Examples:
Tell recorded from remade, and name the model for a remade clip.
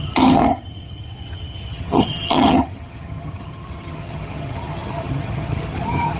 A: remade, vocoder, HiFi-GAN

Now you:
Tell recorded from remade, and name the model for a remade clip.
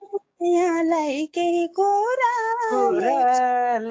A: remade, codec, DAC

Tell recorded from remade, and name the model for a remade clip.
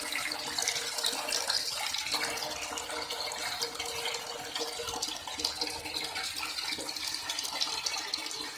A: recorded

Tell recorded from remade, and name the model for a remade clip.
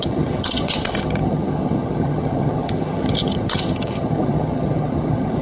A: remade, vocoder, HiFi-GAN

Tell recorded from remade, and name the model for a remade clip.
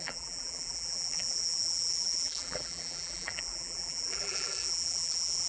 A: remade, vocoder, BigVGAN v2